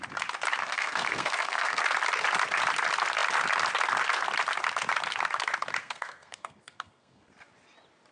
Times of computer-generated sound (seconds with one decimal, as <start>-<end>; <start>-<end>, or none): 0.6-1.8; 5.8-7.3

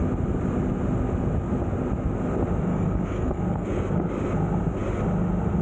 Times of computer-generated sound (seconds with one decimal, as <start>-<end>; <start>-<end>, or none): 2.7-4.2

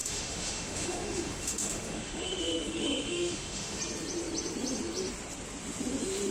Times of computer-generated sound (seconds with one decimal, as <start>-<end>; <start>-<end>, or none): 0.0-3.8

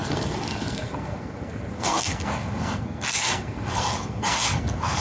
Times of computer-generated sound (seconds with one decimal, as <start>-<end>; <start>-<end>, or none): 0.0-5.0

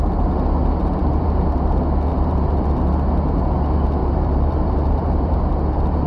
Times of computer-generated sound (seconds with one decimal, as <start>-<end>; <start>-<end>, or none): 1.0-1.7; 2.1-2.8; 4.0-5.4

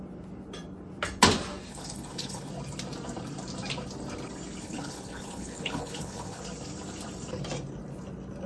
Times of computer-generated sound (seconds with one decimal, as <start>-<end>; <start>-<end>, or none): 1.7-2.5; 4.6-6.4

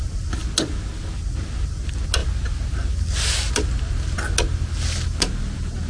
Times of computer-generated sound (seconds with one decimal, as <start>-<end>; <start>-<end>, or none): none

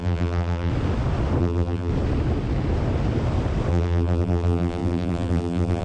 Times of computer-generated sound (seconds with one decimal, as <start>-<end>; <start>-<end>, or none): 0.0-0.7; 1.4-1.9; 3.7-5.8